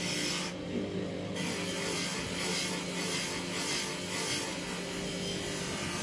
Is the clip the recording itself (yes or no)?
yes